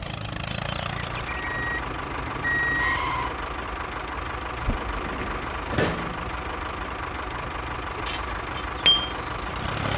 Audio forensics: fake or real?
real